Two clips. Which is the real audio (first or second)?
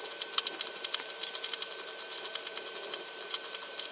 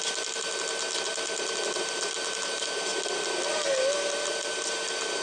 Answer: second